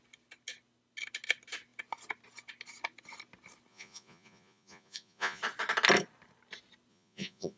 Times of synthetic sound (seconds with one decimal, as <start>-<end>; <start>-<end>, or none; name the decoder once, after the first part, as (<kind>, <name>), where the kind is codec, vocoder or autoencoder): 3.7-5.4 (vocoder, Vocos); 6.9-7.6